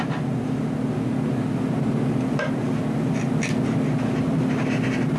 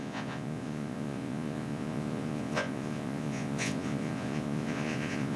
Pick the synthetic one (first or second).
second